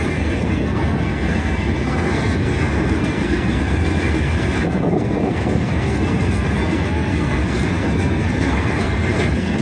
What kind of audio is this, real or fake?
fake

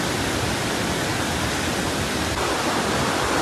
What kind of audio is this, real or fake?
real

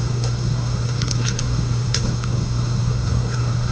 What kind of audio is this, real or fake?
fake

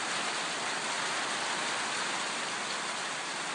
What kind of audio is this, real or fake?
real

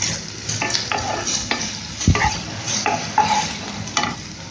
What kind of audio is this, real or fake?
real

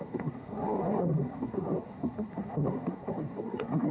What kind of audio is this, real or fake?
fake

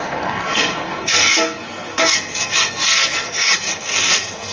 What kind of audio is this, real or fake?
fake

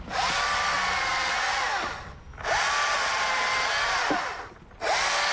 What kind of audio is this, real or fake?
real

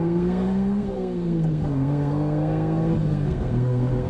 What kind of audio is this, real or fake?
fake